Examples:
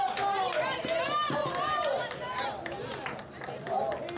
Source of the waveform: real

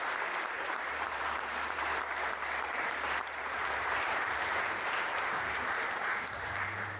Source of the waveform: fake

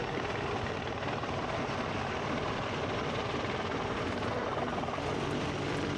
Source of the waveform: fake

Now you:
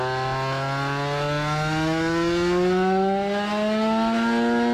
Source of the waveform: real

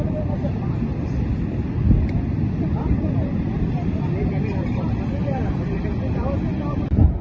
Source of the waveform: real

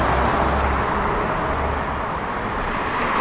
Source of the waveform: real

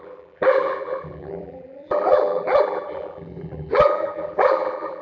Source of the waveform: fake